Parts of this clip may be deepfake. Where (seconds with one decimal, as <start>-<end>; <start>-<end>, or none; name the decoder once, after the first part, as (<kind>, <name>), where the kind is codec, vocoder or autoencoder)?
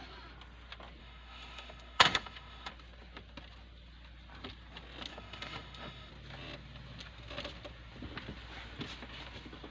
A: 1.0-2.7 (autoencoder, DAC-VAE); 5.1-6.1